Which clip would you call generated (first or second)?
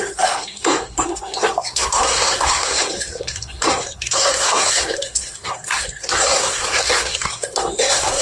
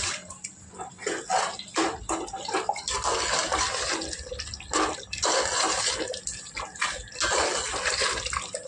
first